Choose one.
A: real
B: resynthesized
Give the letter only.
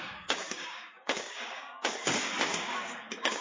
B